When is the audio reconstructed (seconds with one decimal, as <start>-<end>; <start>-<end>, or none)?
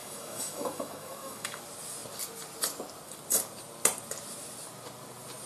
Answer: 0.0-1.6